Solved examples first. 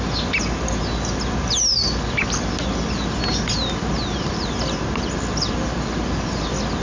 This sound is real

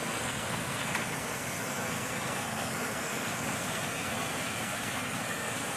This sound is fake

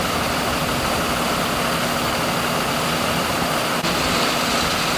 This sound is fake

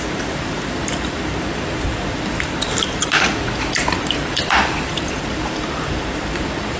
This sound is fake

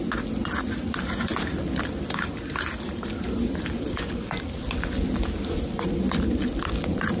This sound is real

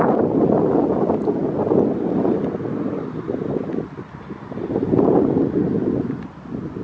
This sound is real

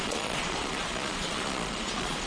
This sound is fake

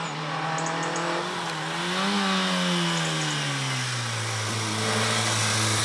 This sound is real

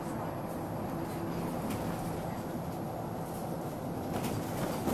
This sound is real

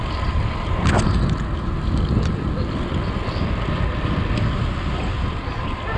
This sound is real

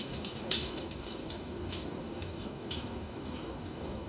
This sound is fake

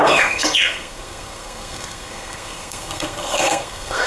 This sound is fake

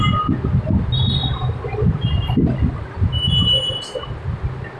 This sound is real